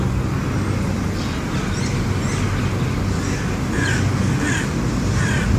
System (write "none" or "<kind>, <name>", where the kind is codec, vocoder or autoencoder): none